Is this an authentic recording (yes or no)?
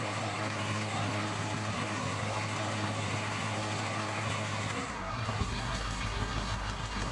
no